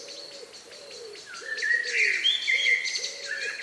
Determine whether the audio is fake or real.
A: real